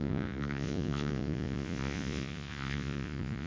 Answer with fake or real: fake